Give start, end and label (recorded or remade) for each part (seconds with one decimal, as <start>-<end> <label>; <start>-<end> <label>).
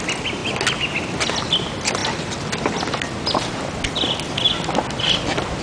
0.0-5.6 recorded